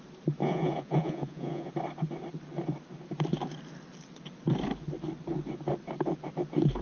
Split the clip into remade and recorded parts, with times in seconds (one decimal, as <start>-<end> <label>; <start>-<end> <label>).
0.0-0.4 recorded; 0.4-1.7 remade; 1.7-6.8 recorded